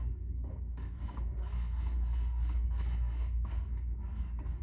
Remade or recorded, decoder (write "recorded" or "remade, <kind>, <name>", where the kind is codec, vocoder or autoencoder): remade, codec, SNAC